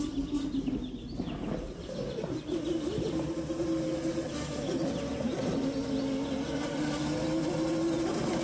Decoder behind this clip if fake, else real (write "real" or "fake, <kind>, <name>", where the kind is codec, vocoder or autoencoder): real